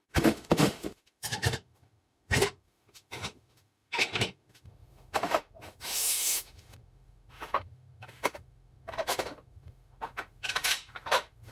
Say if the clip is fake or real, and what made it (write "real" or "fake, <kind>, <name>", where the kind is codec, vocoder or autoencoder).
fake, autoencoder, DAC-VAE